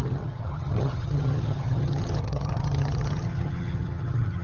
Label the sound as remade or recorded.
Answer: remade